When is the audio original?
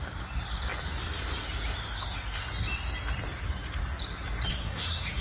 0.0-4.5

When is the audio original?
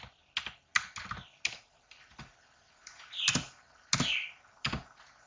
0.0-5.3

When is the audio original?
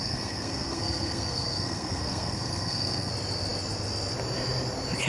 3.1-5.1